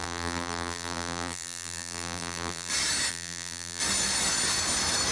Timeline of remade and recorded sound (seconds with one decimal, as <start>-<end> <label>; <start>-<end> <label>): 0.0-2.7 remade; 2.7-3.1 recorded; 3.1-3.8 remade; 3.8-5.1 recorded